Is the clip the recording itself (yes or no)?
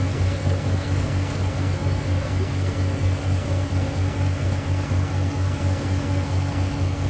no